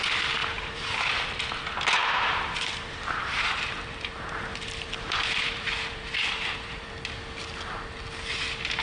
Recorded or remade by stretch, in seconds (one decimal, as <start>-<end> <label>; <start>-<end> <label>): 0.0-0.4 recorded; 0.4-1.4 remade; 1.4-2.0 recorded; 2.0-6.9 remade; 6.9-8.8 recorded